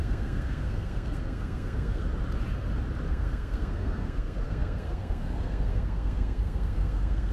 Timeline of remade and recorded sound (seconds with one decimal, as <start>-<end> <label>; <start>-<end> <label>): 0.0-2.0 remade; 2.0-3.1 recorded; 3.1-7.3 remade